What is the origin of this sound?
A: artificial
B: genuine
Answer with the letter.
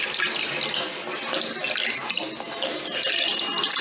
B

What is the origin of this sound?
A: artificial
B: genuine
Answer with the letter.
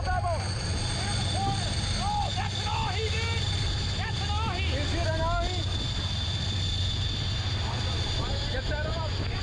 B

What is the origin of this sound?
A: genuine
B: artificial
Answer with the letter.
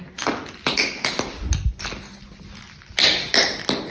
A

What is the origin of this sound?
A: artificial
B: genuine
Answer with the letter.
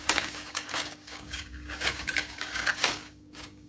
A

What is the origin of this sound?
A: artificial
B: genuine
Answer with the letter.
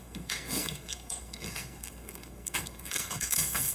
A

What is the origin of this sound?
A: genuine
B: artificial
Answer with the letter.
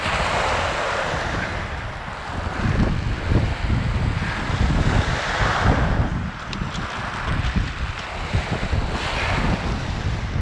A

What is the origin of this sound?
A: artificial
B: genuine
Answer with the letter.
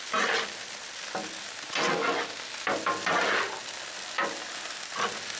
B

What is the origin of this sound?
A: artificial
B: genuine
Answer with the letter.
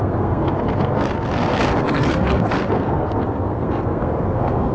A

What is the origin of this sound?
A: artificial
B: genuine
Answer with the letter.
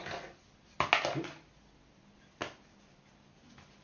B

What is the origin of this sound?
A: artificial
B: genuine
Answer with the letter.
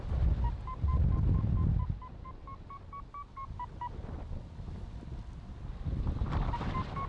B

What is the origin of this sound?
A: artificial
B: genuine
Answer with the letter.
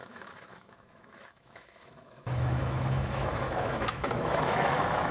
A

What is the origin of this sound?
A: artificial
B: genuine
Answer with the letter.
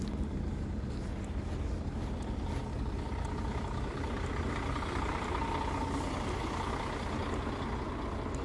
B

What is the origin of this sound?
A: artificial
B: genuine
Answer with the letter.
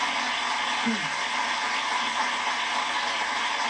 B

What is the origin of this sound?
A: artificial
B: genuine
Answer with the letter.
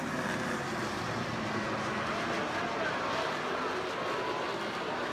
B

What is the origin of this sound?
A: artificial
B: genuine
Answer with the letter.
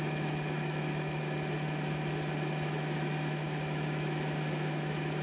A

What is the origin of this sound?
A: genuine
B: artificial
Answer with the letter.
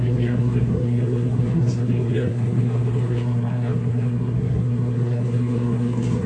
B